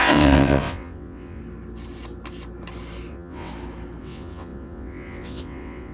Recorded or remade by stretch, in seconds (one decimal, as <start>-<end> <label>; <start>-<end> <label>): 0.0-1.4 remade; 1.4-3.1 recorded; 3.1-3.5 remade; 3.5-4.0 recorded; 4.0-5.9 remade